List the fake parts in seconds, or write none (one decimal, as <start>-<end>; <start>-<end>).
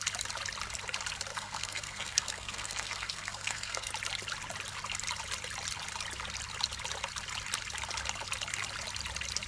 1.3-3.9